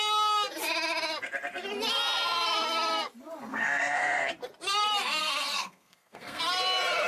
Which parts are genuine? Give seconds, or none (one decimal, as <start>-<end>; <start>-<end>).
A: 0.0-3.5; 4.3-5.2; 6.4-7.1